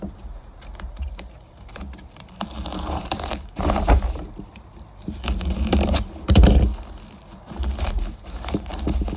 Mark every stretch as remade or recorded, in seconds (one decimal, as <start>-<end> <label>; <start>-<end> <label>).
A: 0.0-6.7 remade; 6.7-7.8 recorded; 7.8-8.7 remade; 8.7-9.2 recorded